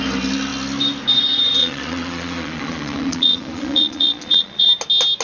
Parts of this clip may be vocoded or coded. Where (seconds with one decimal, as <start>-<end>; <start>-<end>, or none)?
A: 1.6-4.7